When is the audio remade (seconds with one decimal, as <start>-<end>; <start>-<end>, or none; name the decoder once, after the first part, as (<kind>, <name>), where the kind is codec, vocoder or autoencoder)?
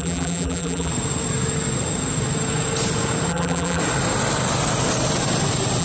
0.0-0.9 (vocoder, BigVGAN v2); 3.3-3.8